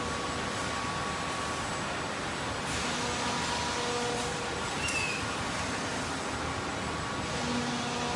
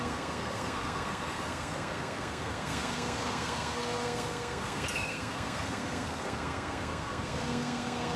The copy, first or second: second